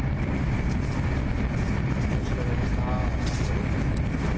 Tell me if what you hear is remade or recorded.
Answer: recorded